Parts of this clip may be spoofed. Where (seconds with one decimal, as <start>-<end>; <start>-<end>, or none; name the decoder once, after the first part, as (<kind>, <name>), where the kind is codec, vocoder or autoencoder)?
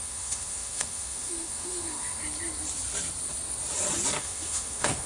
0.0-2.2 (autoencoder, DAC-VAE); 4.2-5.1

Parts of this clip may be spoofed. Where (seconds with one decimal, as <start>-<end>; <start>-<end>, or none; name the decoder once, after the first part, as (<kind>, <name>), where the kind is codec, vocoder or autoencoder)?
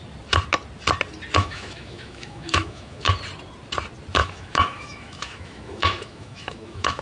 1.4-3.1 (autoencoder, DAC-VAE); 4.2-7.0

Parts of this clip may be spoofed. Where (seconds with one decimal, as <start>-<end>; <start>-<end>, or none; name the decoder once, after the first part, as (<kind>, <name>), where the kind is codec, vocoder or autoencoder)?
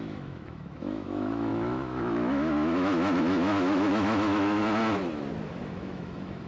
0.0-4.6 (autoencoder, DAC-VAE); 5.6-6.5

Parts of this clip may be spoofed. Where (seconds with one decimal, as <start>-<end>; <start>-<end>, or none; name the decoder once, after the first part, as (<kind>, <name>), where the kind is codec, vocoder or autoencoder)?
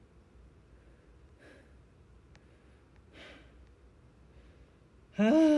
none